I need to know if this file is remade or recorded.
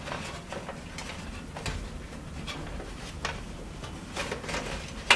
recorded